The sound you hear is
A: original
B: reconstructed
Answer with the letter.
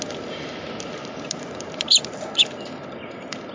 A